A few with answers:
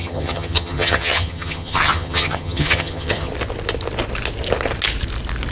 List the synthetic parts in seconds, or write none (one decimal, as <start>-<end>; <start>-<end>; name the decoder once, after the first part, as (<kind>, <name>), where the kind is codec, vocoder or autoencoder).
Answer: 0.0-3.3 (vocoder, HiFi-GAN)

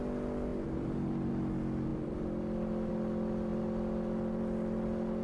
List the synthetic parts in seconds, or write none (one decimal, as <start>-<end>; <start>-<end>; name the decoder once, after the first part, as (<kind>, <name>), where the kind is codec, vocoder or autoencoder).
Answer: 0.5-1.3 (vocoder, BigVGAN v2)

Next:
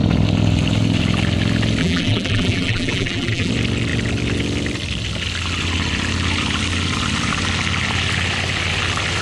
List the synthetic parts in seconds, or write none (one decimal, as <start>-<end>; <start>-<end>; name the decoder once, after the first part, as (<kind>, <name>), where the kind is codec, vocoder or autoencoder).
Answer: 1.8-3.5 (vocoder, BigVGAN v2)

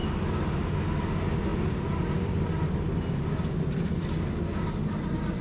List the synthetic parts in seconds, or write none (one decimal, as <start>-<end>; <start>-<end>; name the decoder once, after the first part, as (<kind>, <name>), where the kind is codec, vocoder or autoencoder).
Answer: none

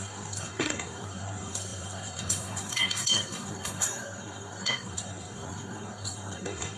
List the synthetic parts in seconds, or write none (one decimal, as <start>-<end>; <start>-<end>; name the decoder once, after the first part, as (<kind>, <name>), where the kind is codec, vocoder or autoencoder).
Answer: 0.0-6.8 (codec, SNAC)

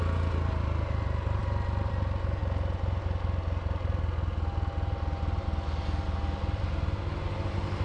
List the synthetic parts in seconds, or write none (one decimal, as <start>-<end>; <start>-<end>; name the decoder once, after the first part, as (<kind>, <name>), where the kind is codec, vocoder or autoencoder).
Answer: none